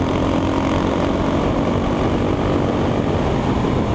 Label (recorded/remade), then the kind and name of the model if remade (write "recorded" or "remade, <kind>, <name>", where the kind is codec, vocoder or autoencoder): recorded